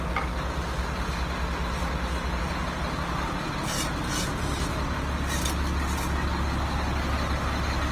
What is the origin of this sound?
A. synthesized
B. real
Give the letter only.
B